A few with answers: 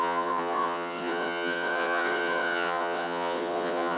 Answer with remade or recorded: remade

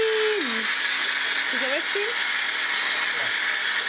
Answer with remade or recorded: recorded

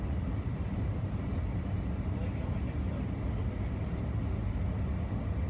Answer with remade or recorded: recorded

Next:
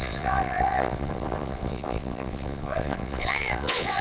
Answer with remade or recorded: remade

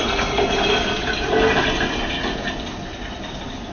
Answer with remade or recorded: recorded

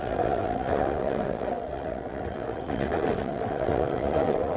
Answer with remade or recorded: remade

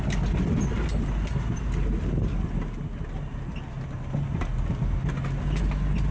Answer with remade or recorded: recorded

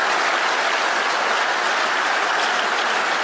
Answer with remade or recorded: recorded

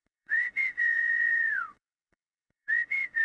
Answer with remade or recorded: remade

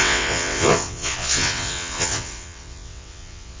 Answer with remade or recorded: remade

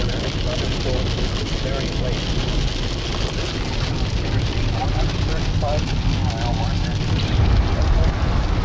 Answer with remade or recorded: recorded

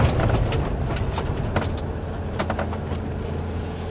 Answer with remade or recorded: recorded